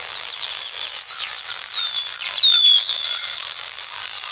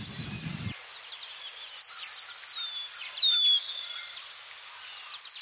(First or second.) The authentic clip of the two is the second